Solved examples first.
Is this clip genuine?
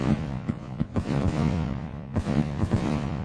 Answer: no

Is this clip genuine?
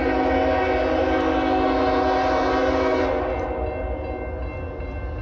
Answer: yes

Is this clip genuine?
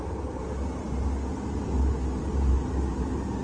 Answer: yes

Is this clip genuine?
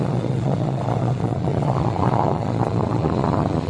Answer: no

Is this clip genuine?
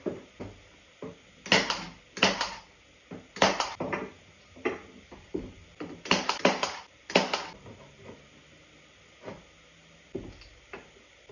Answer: yes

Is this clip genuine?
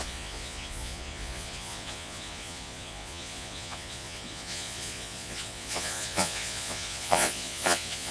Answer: no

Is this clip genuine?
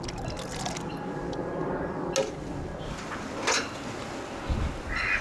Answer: yes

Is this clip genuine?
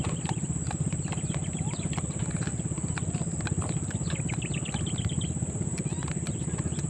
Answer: yes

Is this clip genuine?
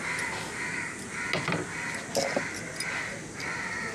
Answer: yes